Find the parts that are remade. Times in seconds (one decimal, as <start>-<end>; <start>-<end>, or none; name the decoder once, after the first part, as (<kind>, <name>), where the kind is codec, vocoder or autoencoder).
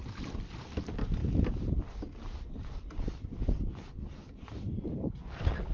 1.2-3.9 (vocoder, BigVGAN v2)